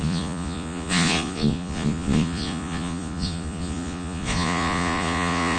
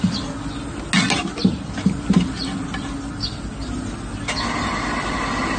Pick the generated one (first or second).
first